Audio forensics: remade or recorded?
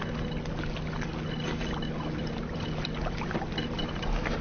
recorded